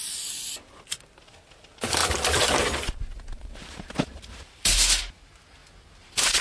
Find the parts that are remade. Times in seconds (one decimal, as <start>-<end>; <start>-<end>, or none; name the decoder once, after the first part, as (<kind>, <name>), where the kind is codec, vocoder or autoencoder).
none